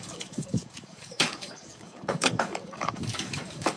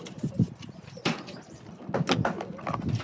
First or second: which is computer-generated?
first